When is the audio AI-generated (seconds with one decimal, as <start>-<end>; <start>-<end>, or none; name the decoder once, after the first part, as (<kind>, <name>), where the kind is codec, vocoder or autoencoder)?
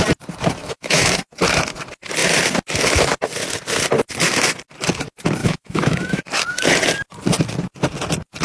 0.6-1.1 (autoencoder, DAC-VAE); 5.4-6.2